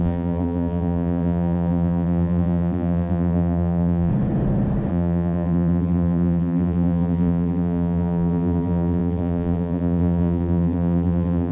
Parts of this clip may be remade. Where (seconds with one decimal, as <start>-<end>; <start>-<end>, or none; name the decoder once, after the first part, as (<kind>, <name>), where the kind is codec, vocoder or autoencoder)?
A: 0.0-4.1 (vocoder, BigVGAN v2); 4.9-11.5